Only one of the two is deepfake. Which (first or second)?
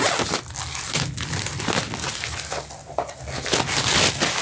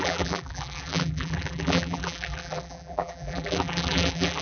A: second